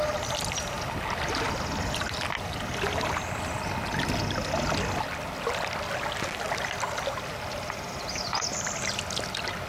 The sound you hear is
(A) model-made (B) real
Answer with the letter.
B